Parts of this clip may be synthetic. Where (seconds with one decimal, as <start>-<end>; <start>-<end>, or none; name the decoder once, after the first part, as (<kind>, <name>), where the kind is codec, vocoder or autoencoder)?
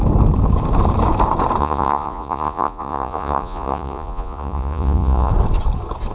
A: 1.6-5.3 (vocoder, Vocos)